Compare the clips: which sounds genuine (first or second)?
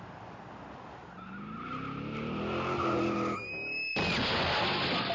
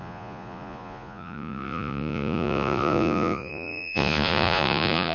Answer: first